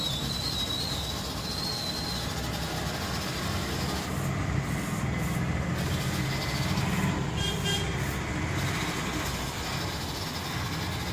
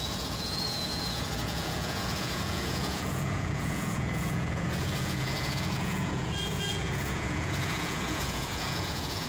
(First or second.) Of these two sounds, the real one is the first